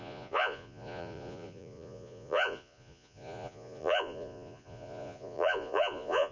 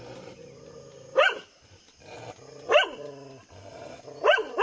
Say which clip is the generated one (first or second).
first